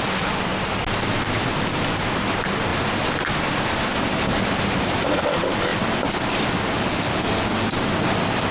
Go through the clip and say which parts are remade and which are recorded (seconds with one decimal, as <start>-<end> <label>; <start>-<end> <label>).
0.0-8.5 recorded